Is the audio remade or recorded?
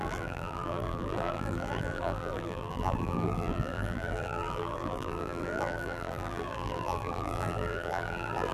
remade